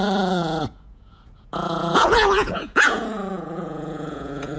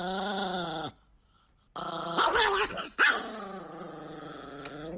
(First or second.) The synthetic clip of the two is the first